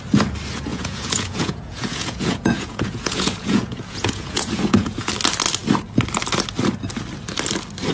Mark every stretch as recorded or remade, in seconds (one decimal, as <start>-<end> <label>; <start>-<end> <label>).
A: 0.0-0.7 recorded; 0.7-5.1 remade; 5.1-7.9 recorded